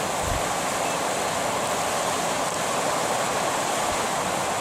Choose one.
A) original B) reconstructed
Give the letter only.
A